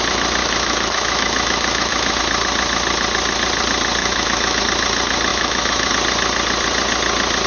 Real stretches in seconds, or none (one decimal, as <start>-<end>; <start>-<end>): 0.0-0.4; 2.2-4.0; 4.6-5.3; 5.9-7.5